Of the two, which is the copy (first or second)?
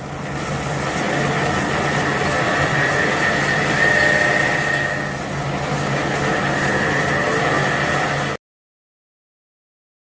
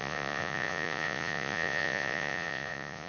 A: second